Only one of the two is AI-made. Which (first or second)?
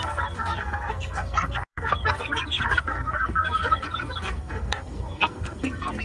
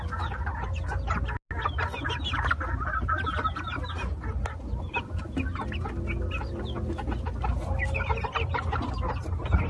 first